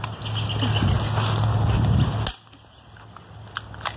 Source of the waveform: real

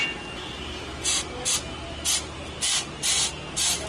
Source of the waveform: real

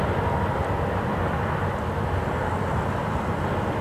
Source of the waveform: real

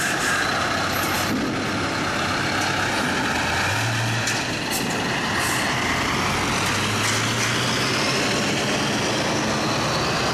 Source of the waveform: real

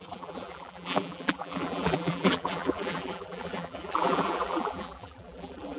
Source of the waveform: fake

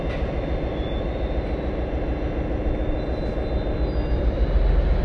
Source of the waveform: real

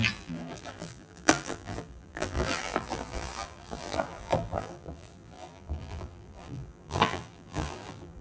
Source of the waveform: fake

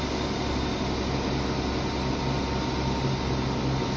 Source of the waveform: real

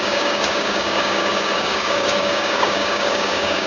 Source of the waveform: fake